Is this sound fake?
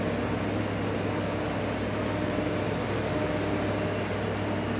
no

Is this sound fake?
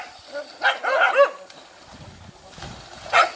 no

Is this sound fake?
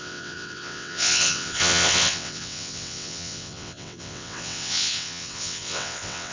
yes